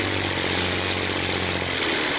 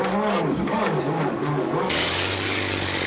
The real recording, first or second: first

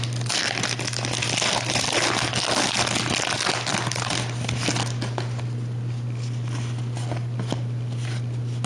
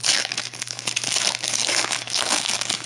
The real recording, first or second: first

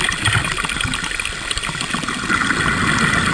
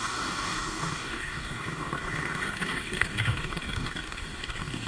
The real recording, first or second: first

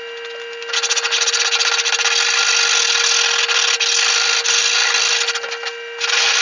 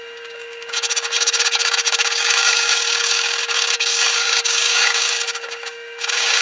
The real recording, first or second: first